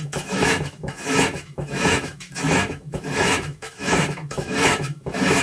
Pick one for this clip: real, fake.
fake